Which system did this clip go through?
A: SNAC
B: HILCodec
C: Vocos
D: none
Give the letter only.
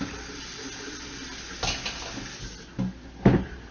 D